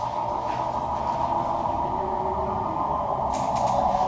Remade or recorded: recorded